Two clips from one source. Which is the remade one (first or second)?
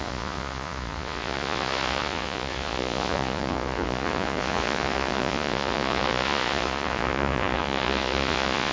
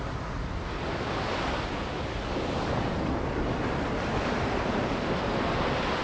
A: first